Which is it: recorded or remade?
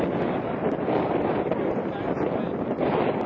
recorded